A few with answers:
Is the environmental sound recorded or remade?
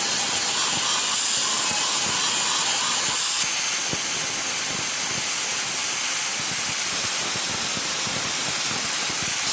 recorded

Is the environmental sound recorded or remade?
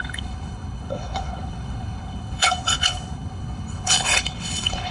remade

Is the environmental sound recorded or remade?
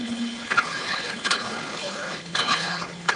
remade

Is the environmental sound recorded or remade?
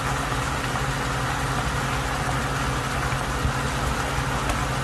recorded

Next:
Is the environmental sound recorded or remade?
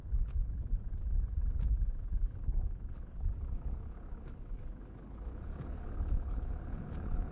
remade